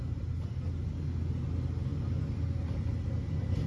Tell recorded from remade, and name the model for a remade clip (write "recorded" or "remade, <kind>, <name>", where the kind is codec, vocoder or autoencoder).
recorded